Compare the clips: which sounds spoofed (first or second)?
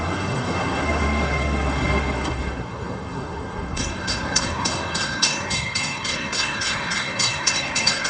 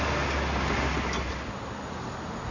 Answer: first